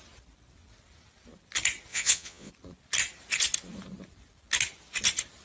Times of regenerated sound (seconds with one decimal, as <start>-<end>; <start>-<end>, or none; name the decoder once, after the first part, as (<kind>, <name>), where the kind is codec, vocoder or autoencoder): 1.9-2.5 (vocoder, Vocos)